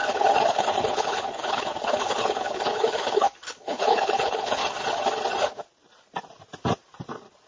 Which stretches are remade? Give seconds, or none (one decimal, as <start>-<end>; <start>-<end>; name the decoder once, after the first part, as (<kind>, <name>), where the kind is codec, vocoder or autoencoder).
0.0-4.6 (codec, HILCodec)